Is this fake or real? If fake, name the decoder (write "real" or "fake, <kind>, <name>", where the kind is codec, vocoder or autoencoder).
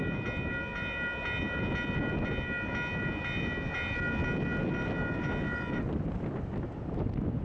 real